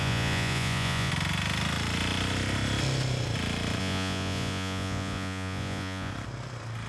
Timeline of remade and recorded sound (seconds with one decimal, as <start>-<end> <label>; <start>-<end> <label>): 0.0-1.1 remade; 1.1-3.8 recorded; 3.8-6.1 remade; 6.1-6.9 recorded